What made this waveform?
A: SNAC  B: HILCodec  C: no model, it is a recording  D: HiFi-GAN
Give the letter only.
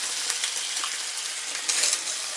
C